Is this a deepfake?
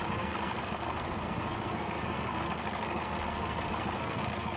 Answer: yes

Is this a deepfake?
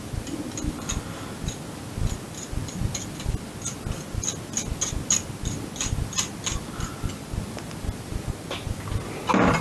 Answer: no